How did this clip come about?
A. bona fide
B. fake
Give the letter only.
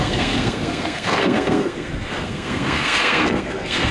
B